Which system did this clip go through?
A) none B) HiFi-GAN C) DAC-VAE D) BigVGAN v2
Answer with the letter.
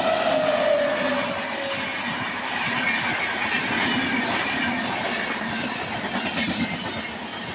A